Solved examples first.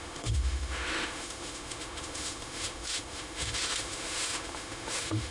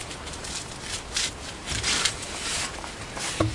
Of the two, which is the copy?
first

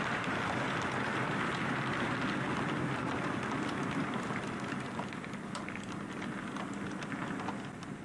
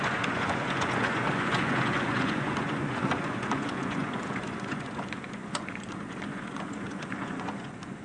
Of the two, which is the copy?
second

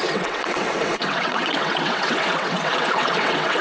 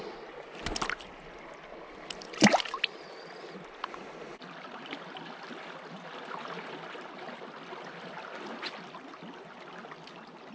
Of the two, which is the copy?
first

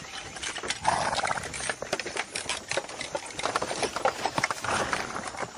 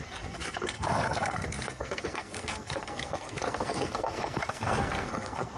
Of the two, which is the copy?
second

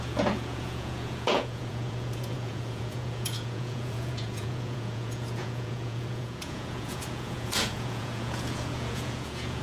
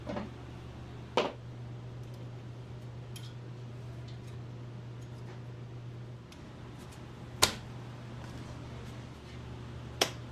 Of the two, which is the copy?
first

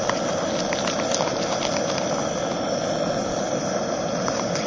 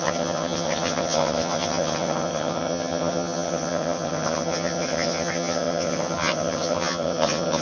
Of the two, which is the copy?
second